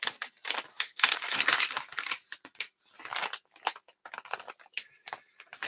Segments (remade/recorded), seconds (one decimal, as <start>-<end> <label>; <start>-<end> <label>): 0.0-0.7 recorded; 0.7-1.7 remade; 1.7-5.7 recorded